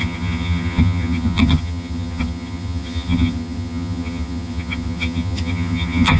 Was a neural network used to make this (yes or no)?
yes